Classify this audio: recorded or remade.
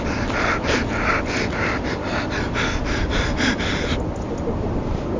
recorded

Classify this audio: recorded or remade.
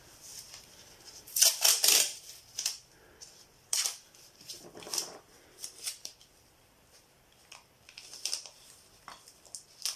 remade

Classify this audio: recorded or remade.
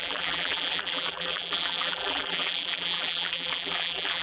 remade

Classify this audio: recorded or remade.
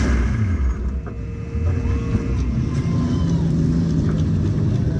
recorded